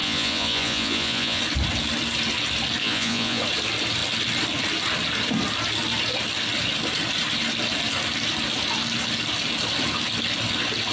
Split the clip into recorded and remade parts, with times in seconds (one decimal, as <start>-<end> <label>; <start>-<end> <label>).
0.0-1.4 remade; 1.4-2.8 recorded; 2.8-3.4 remade; 3.4-10.9 recorded